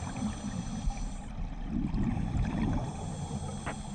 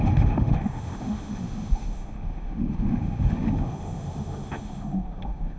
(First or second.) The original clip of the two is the first